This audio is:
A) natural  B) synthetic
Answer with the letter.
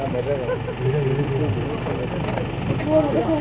A